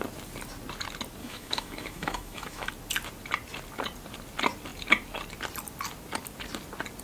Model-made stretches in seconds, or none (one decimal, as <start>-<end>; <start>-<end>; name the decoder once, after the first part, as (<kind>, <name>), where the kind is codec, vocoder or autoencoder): 1.2-2.7 (autoencoder, DAC-VAE)